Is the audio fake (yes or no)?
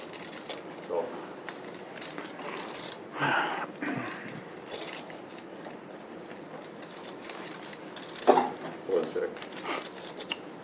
yes